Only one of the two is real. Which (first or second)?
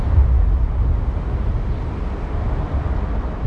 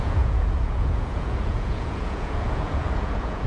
first